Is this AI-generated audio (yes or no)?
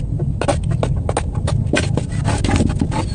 no